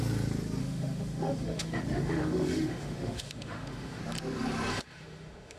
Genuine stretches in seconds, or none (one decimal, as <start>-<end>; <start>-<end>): 0.0-0.6; 4.0-4.7